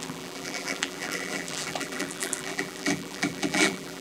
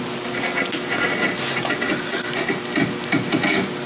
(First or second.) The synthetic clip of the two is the first